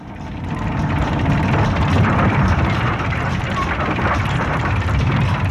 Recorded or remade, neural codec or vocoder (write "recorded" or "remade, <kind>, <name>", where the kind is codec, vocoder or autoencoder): remade, vocoder, BigVGAN v2